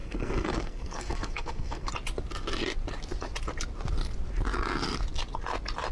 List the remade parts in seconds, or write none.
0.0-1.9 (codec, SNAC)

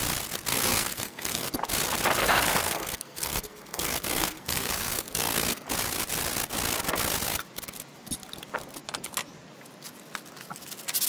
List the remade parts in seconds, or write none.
0.5-1.5 (codec, SNAC); 2.2-5.7

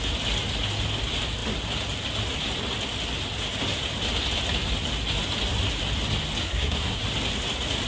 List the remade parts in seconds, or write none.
6.4-7.0 (codec, SNAC)

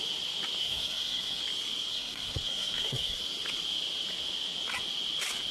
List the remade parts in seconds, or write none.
0.6-1.4 (codec, SNAC); 1.9-3.2